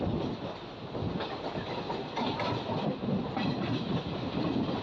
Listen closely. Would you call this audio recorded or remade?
recorded